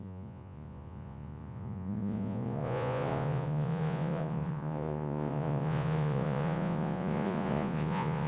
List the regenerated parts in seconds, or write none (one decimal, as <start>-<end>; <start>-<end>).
0.0-8.3